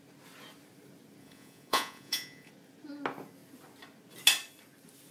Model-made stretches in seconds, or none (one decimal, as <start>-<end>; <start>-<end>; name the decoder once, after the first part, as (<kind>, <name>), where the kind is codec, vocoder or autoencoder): 1.2-2.5 (vocoder, Vocos)